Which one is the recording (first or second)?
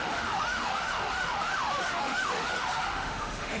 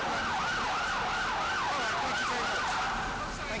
second